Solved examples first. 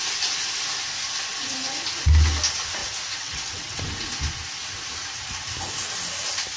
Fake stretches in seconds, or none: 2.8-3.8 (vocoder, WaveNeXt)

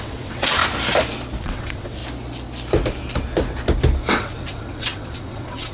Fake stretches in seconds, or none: 0.0-0.6 (vocoder, WaveNeXt); 1.4-2.0; 4.1-5.7

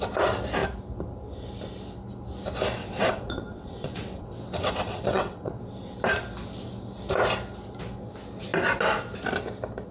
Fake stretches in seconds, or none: 2.8-5.6 (vocoder, WaveNeXt)

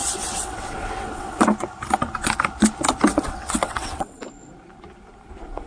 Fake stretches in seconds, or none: 0.0-1.4 (vocoder, WaveNeXt); 3.1-4.2

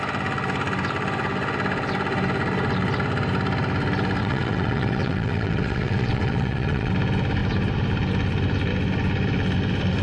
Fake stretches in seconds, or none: 4.2-6.9 (vocoder, WaveNeXt)